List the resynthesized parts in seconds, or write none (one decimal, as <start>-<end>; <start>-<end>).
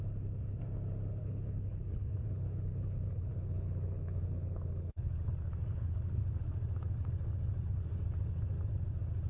1.2-5.3; 5.7-6.5